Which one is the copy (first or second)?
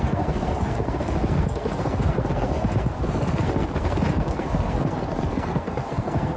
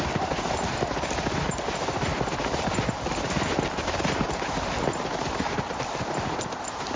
first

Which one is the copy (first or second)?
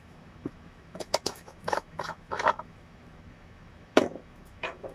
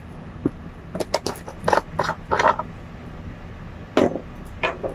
first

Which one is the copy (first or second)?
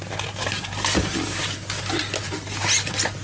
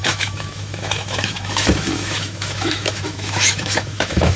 second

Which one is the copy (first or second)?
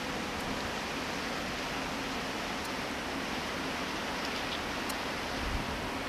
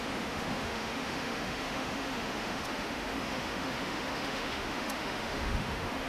second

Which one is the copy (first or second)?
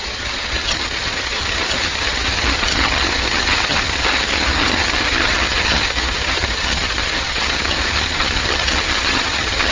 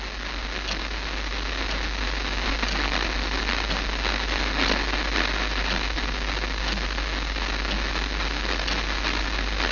first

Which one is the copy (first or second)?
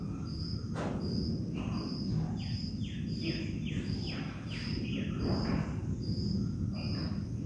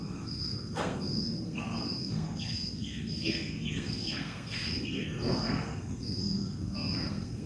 second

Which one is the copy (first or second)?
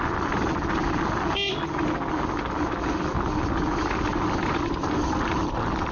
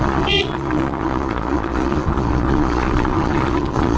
second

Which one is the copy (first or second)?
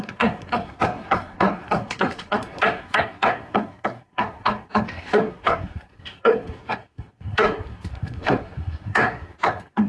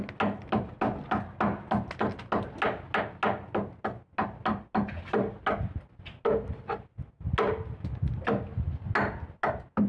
first